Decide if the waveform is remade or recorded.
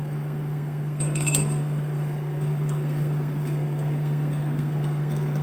remade